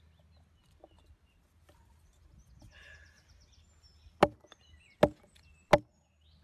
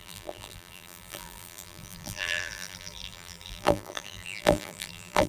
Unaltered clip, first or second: first